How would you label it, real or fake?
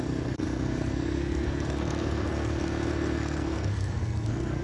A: fake